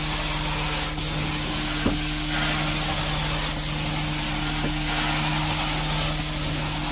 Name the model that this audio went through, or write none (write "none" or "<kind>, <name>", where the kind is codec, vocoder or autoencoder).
none